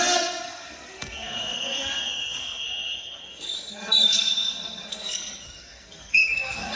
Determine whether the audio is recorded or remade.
remade